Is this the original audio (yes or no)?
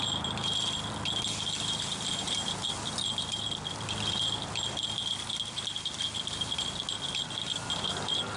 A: yes